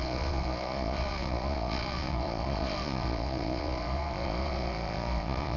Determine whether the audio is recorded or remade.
remade